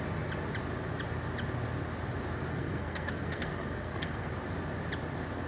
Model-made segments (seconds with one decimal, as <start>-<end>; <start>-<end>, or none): 2.5-4.3